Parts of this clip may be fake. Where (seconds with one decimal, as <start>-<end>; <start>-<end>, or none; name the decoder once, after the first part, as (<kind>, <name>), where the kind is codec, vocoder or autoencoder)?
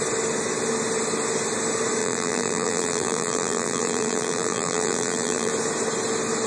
2.0-5.5 (vocoder, BigVGAN v2)